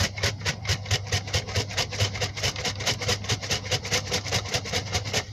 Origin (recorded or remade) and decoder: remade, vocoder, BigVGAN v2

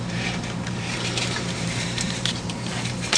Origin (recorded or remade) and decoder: remade, vocoder, BigVGAN v2